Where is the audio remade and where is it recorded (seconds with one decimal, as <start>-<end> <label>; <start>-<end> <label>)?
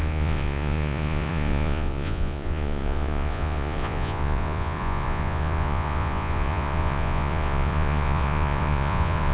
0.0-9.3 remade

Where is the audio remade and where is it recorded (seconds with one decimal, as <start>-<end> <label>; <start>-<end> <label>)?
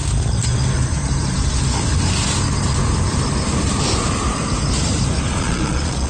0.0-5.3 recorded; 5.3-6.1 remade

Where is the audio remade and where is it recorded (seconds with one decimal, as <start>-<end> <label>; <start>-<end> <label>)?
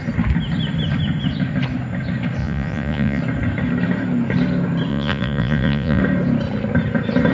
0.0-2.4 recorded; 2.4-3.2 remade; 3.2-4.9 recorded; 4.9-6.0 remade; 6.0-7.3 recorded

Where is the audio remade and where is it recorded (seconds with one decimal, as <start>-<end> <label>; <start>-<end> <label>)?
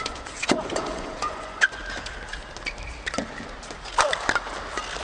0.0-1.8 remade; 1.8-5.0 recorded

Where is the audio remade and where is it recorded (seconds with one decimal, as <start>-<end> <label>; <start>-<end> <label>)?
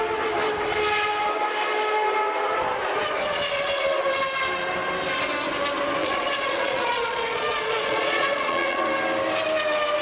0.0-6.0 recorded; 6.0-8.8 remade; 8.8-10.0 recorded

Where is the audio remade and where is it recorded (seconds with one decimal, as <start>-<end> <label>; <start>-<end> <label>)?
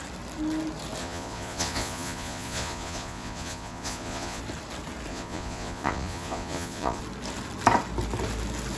0.0-1.0 recorded; 1.0-4.4 remade; 4.4-5.1 recorded; 5.1-7.0 remade; 7.0-8.8 recorded